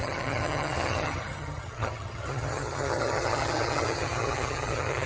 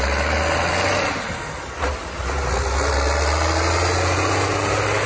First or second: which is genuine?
second